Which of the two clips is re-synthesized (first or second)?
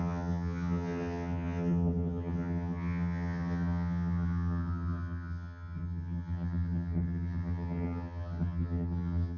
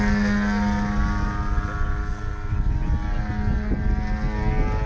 first